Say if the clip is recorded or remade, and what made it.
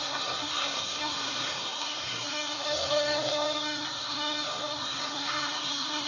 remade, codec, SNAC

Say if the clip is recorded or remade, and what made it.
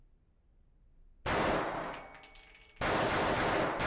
recorded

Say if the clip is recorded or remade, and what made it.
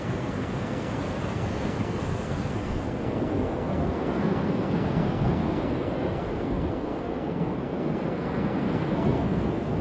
remade, codec, SNAC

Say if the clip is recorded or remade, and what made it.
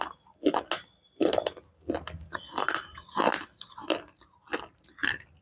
recorded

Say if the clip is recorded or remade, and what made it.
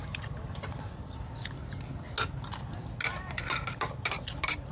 recorded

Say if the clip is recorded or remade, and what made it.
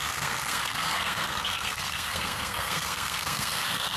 remade, codec, SNAC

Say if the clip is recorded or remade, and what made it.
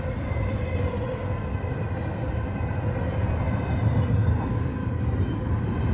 recorded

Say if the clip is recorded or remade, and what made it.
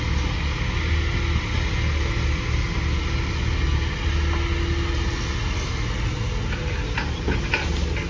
recorded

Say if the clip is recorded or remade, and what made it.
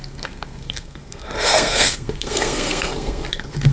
remade, codec, SNAC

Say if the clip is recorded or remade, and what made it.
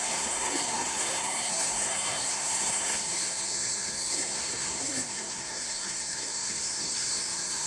remade, codec, SNAC